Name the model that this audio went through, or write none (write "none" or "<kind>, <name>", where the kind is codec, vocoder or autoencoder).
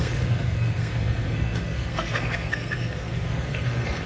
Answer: codec, SNAC